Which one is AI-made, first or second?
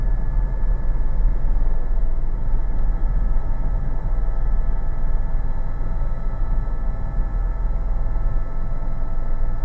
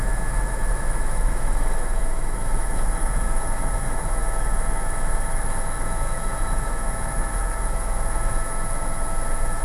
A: second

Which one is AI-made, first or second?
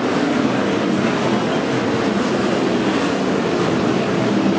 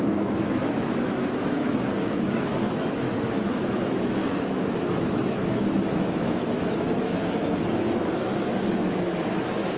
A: second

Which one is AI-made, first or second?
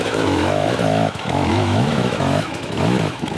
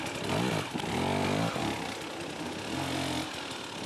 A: first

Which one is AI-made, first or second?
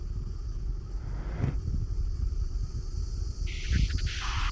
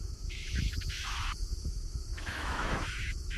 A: second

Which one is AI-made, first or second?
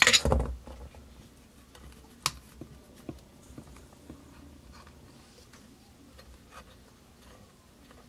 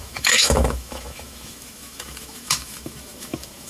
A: second